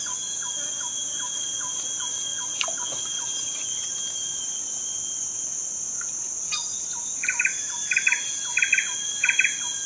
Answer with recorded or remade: recorded